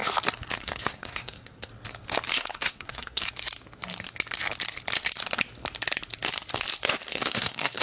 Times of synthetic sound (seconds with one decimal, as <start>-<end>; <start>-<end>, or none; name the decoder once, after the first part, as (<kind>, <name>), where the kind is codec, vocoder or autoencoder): 0.6-1.7 (codec, SNAC); 2.3-3.2; 7.1-7.8